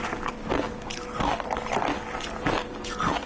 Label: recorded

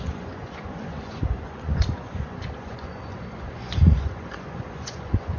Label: remade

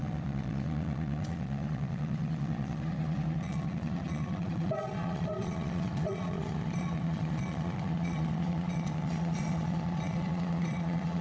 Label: remade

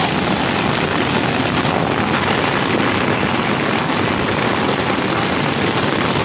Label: recorded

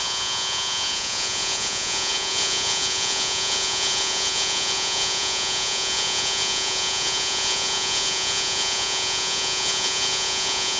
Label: remade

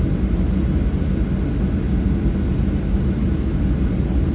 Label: recorded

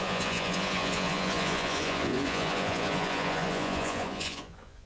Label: remade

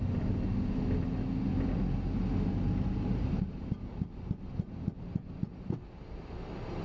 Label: recorded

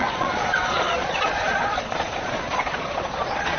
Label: remade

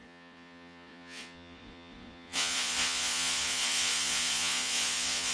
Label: remade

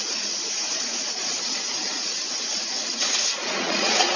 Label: remade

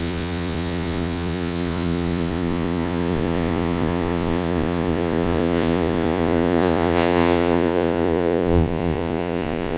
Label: remade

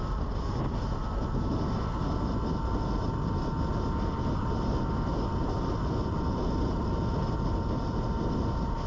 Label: recorded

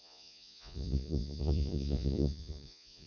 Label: remade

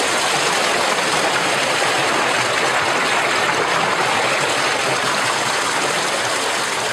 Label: recorded